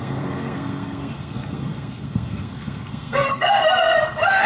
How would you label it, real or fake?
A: fake